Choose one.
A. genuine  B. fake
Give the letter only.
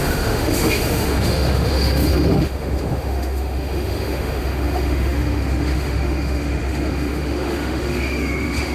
B